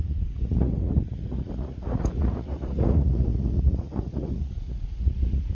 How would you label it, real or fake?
fake